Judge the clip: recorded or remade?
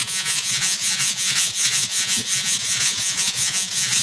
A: remade